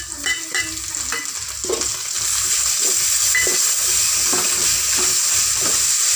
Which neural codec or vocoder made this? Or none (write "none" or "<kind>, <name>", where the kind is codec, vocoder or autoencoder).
none